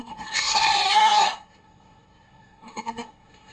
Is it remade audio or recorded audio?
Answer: remade